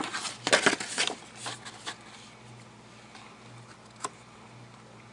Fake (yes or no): no